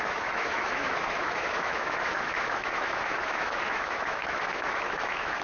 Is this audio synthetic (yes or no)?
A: yes